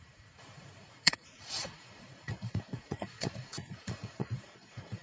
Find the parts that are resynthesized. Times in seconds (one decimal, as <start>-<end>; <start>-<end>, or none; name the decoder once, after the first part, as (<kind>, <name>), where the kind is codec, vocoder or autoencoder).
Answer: 0.0-5.0 (vocoder, Vocos)